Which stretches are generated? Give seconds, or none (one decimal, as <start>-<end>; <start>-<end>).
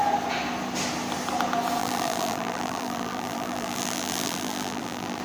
1.8-5.2